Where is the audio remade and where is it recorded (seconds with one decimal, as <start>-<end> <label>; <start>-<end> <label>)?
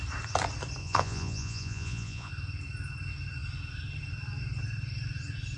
0.0-0.8 recorded; 0.8-2.3 remade; 2.3-5.6 recorded